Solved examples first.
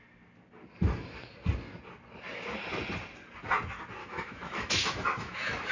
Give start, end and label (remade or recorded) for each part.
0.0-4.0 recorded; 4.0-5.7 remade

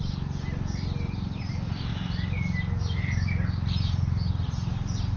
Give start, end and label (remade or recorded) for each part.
0.0-5.2 recorded

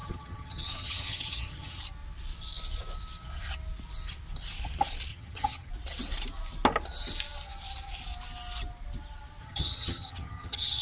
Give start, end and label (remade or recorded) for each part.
0.0-1.8 remade; 1.8-5.1 recorded; 5.1-5.7 remade; 5.7-9.4 recorded; 9.4-10.8 remade